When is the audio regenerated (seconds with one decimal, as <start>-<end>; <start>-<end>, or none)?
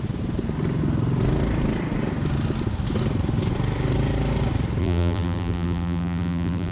4.8-6.7